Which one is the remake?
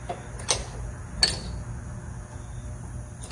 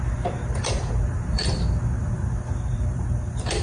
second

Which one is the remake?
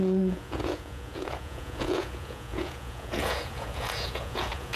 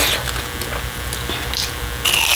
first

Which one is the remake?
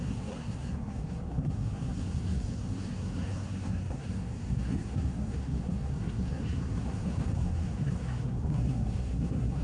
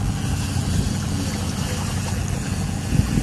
first